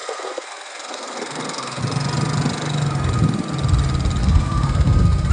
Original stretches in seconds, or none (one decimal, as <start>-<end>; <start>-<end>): 1.8-4.2